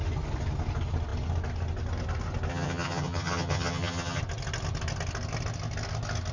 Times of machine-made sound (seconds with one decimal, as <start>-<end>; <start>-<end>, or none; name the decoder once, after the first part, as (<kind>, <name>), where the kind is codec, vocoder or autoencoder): 2.5-4.2 (vocoder, HiFi-GAN)